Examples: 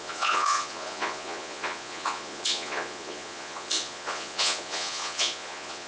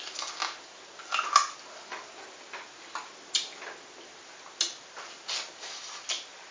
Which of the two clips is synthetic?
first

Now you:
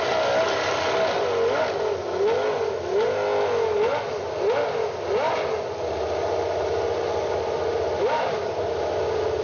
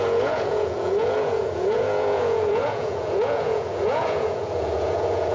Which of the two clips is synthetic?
second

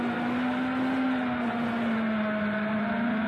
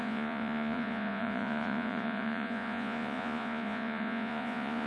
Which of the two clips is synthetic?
second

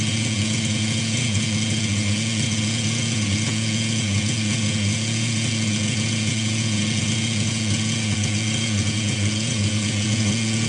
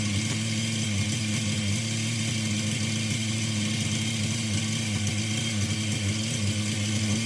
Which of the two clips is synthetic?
first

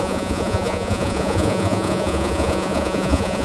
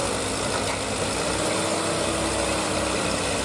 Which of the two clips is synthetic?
first